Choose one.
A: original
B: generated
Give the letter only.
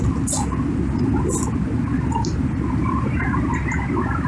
A